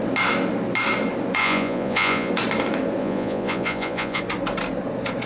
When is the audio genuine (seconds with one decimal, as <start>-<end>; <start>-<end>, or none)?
0.0-1.4; 2.3-3.0; 4.2-5.3

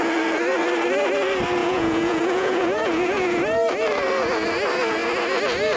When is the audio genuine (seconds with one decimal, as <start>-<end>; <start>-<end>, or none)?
0.0-1.6; 3.4-5.8

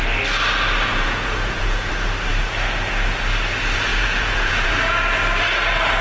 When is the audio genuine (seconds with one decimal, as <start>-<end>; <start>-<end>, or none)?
0.0-0.9; 1.9-3.9; 4.7-6.0

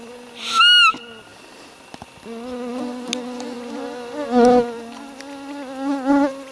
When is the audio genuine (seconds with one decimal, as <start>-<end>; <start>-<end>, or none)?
0.0-6.5

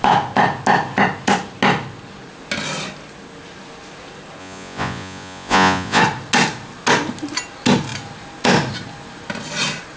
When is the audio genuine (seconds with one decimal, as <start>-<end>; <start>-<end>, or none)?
0.0-4.4; 6.0-10.0

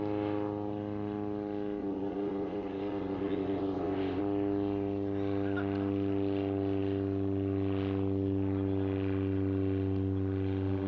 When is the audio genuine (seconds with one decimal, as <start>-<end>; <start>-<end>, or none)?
0.0-1.8; 4.2-10.9